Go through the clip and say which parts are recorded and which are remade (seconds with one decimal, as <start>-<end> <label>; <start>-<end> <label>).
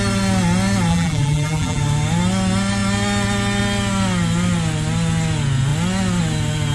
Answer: 0.0-0.9 recorded; 0.9-1.8 remade; 1.8-6.7 recorded